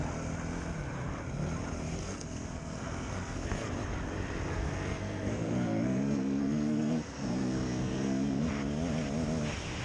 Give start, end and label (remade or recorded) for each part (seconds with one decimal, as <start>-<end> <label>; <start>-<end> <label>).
0.0-2.0 recorded; 2.0-3.7 remade; 3.7-4.5 recorded; 4.5-8.5 remade; 8.5-9.8 recorded